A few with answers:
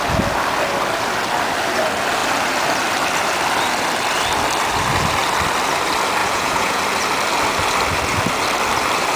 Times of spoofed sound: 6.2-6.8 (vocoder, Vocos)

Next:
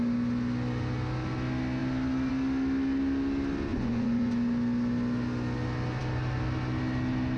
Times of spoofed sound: 3.7-4.3 (vocoder, Vocos)

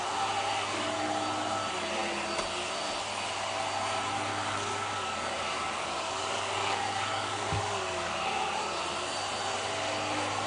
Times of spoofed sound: 4.3-8.8 (codec, DAC)